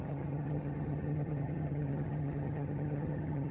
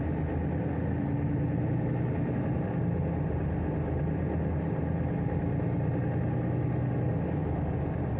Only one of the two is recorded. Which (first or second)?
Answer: second